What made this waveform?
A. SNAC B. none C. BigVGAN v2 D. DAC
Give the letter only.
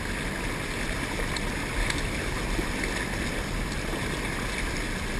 B